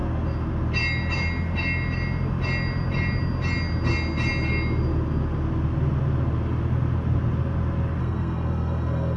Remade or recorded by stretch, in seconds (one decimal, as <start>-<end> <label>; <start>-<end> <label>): 0.0-8.0 recorded; 8.0-9.2 remade